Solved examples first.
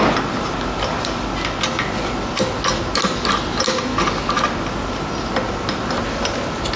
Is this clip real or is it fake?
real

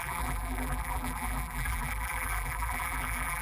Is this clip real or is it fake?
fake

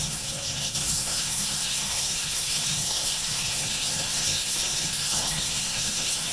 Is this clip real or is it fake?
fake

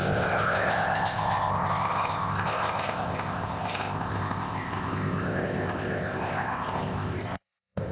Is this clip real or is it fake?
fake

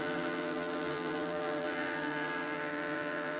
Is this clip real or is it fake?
fake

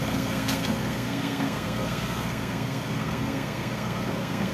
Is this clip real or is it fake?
fake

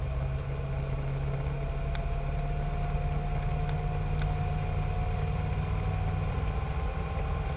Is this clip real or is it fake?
real